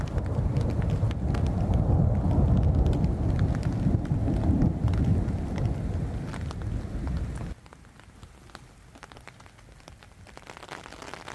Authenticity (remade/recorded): recorded